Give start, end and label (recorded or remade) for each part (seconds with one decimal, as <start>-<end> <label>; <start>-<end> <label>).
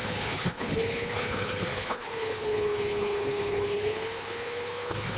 0.0-5.2 remade